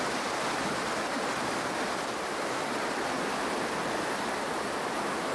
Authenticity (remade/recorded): recorded